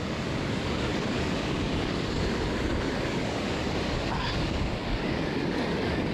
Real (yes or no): no